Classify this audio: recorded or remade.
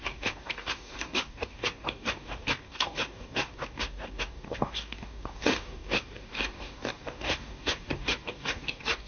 remade